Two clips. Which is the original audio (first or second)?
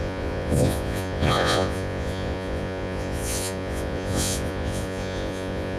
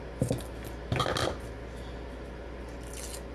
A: second